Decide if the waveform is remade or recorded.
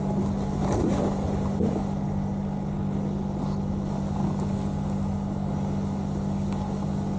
recorded